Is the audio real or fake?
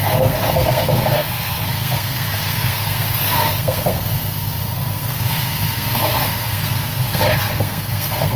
fake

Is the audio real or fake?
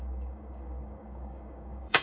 fake